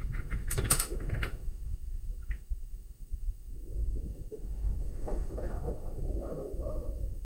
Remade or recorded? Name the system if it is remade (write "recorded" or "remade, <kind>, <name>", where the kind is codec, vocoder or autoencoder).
remade, autoencoder, DAC-VAE